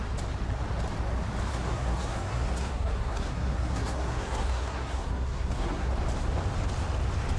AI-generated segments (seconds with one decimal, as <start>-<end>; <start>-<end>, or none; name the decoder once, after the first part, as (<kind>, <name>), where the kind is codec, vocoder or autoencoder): 1.5-5.9 (codec, SNAC)